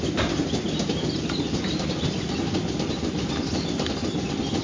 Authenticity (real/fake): real